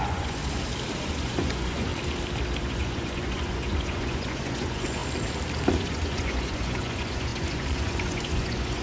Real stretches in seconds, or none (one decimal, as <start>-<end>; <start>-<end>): 0.4-1.0; 1.9-2.6; 5.0-5.7